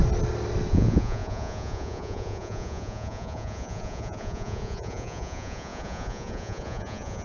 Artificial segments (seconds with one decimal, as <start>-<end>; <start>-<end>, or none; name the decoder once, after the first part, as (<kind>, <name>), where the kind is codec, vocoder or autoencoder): 0.7-7.2 (vocoder, Vocos)